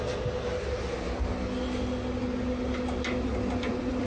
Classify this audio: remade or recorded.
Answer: recorded